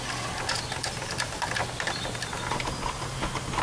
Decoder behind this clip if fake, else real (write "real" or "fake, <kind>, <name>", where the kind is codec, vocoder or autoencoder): real